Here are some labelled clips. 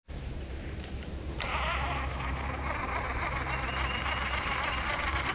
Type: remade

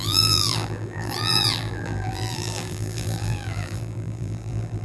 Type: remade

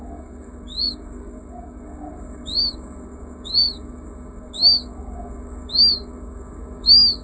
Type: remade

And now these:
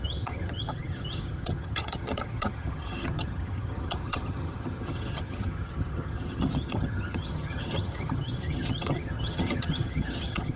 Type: remade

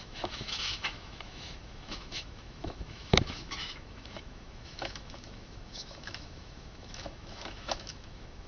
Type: remade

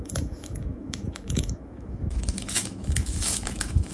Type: remade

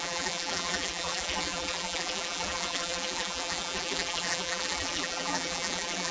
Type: remade